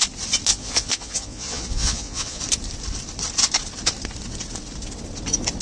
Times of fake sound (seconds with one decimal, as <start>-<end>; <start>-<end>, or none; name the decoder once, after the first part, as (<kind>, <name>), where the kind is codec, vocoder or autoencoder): 0.5-2.4 (vocoder, Vocos)